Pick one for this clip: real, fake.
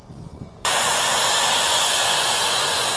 fake